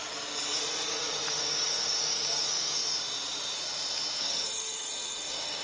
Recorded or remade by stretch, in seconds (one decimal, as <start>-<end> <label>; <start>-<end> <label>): 0.0-0.8 recorded; 0.8-2.8 remade; 2.8-4.2 recorded; 4.2-5.6 remade